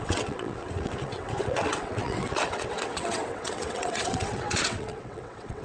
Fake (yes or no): yes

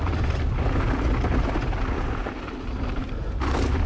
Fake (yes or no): no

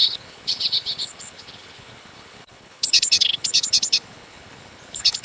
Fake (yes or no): yes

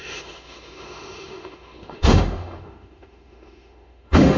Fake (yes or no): yes